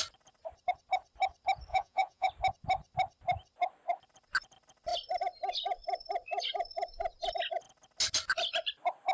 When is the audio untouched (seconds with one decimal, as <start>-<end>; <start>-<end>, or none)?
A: 0.0-1.7; 2.3-9.1